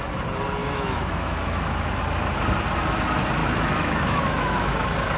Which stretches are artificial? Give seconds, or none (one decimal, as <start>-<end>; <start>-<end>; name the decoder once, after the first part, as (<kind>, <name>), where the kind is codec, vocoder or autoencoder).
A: 0.6-2.0 (autoencoder, DAC-VAE); 3.4-4.7